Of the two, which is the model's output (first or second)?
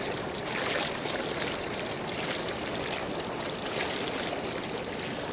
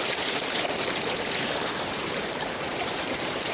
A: second